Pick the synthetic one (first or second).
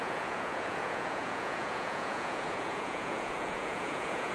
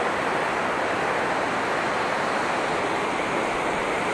first